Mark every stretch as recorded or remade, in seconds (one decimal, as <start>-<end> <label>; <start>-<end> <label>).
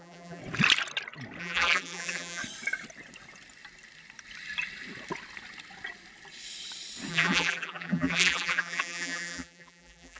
0.0-0.4 remade; 0.4-1.4 recorded; 1.4-2.4 remade; 2.4-7.1 recorded; 7.1-10.2 remade